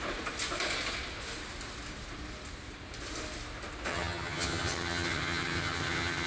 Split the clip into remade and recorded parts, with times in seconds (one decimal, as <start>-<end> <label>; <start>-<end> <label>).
0.0-3.9 recorded; 3.9-6.3 remade